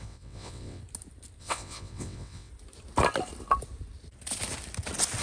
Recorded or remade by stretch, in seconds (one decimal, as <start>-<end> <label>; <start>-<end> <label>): 0.0-0.8 remade; 0.8-1.4 recorded; 1.4-2.5 remade; 2.5-5.2 recorded